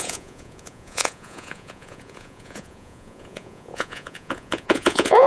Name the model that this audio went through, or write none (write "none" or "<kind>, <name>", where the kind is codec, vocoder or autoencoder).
vocoder, Vocos